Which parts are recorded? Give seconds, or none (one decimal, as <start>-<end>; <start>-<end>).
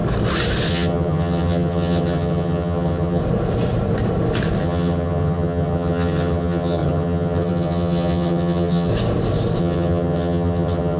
0.0-0.7; 3.2-4.6; 8.9-9.6